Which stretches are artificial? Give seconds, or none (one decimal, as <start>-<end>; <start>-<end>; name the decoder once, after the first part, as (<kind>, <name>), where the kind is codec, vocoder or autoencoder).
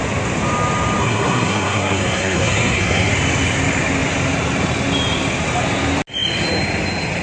1.0-3.1 (codec, SNAC)